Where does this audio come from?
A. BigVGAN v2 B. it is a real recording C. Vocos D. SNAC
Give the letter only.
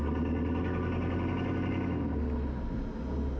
B